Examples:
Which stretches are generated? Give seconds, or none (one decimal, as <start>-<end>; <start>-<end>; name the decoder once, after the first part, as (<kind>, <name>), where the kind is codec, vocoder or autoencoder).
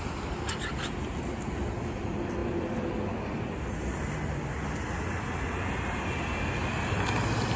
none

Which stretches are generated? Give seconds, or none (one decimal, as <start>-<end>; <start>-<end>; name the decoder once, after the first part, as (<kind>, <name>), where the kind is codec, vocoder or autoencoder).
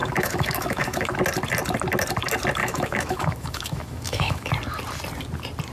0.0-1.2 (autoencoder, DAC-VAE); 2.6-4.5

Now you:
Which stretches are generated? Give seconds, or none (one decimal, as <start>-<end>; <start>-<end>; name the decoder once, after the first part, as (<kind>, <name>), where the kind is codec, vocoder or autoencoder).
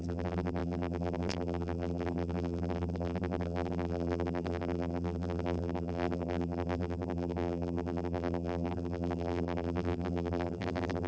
0.0-11.1 (vocoder, BigVGAN v2)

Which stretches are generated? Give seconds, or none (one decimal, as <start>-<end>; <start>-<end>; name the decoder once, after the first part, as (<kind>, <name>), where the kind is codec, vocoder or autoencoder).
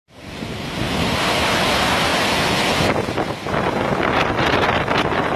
0.0-2.1 (vocoder, BigVGAN v2); 3.1-5.4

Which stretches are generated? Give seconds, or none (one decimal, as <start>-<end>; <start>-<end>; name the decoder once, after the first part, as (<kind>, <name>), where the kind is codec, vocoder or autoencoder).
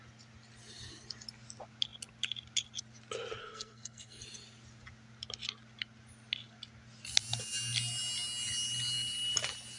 3.4-4.2 (codec, SNAC)